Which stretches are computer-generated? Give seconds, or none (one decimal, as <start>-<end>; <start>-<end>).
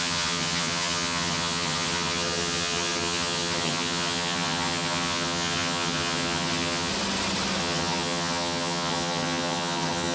0.0-6.9; 7.6-10.1